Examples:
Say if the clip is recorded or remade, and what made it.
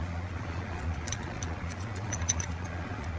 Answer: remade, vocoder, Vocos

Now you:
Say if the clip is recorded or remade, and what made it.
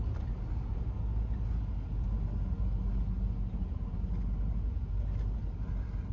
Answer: recorded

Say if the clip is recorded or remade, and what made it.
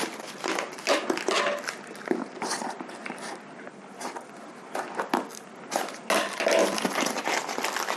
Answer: recorded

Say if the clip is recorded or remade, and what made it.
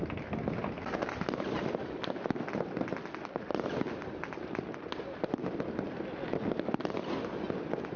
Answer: recorded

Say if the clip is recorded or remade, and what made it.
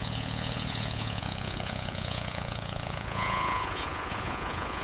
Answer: remade, vocoder, Vocos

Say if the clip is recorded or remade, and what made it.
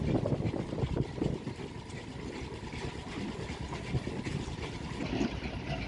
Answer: recorded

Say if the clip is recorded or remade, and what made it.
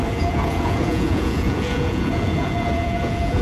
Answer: remade, vocoder, Vocos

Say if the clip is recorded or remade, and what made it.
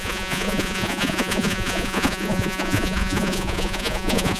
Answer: remade, vocoder, Vocos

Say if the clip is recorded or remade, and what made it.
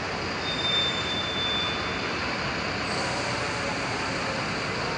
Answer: recorded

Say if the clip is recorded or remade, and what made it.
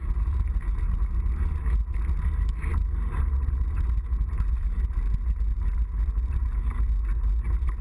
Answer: recorded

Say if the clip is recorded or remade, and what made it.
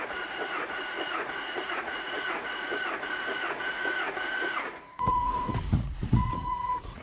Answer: remade, vocoder, Vocos